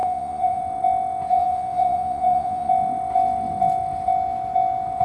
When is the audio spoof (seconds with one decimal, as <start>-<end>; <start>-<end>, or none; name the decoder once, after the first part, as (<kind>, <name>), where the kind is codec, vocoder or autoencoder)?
0.0-0.6 (vocoder, Vocos); 1.3-2.7